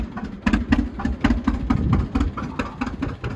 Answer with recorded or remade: recorded